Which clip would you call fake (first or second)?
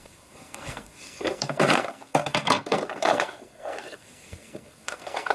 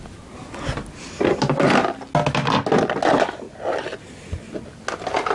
first